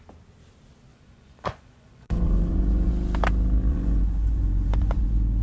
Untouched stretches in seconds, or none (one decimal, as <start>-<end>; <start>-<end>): 0.0-0.9; 2.9-3.7; 5.0-5.4